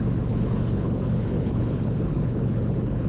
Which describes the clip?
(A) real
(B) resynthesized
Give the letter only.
B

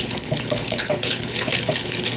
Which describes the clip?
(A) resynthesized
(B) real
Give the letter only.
A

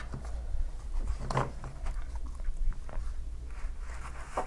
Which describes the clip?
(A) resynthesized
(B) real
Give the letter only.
B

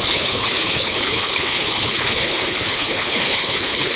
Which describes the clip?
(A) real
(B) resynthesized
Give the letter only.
B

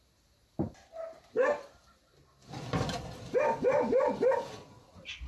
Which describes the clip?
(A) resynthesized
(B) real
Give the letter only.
B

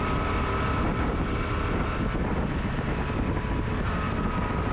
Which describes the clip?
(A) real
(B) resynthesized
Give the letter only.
A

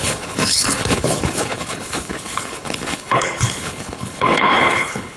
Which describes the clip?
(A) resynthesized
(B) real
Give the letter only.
A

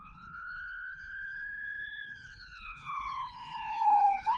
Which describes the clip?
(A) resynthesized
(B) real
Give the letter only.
A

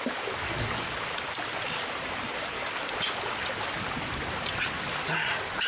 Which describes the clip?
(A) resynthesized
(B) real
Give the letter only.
B